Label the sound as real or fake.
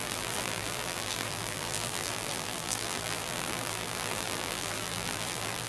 fake